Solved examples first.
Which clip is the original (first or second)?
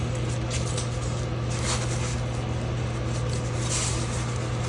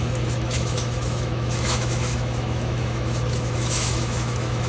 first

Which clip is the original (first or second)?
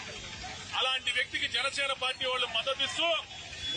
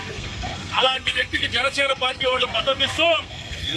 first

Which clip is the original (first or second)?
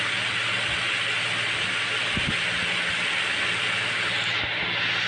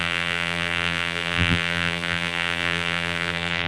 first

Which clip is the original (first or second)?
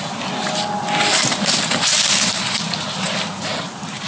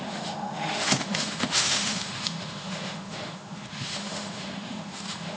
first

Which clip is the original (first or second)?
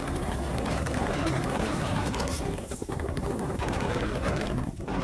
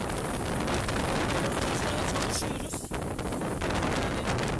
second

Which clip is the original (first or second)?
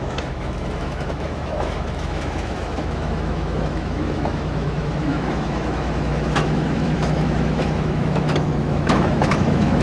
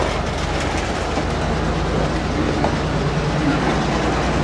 second